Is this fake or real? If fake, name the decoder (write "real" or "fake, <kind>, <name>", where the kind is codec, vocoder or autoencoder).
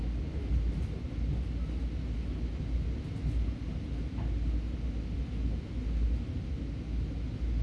real